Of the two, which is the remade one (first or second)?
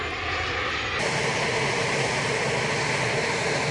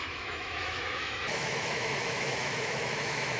second